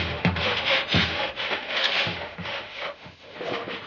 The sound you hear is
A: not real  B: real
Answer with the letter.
A